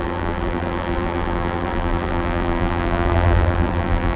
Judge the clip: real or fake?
fake